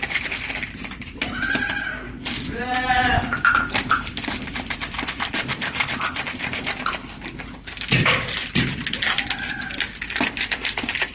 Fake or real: fake